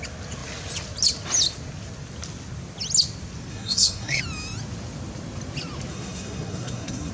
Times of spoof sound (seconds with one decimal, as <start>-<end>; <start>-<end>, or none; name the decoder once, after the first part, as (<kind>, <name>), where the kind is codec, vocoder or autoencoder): 3.5-4.2 (codec, SNAC); 5.9-7.1